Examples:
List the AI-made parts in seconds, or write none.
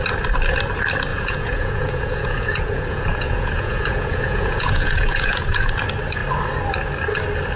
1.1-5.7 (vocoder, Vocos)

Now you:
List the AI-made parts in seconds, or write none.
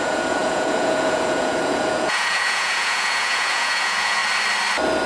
0.0-4.2 (vocoder, Vocos)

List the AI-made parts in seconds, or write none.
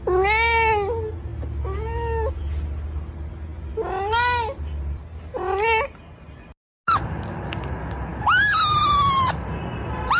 none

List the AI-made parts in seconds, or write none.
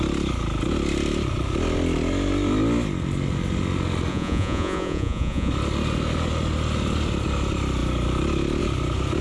4.1-5.5 (vocoder, Vocos)